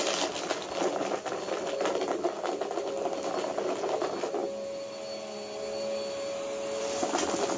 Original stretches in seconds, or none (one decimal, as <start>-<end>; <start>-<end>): 0.0-7.6